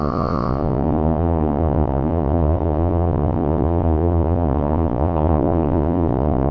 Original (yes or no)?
no